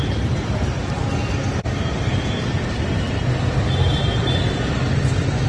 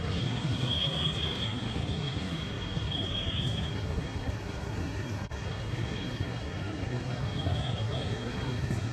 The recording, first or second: first